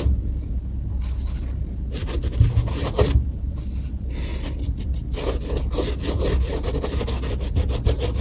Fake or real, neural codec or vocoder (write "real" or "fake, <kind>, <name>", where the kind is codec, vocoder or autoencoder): real